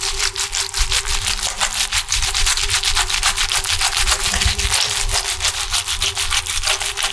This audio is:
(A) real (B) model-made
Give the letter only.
B